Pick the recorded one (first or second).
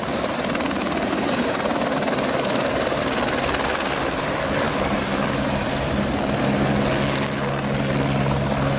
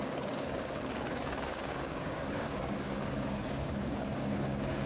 first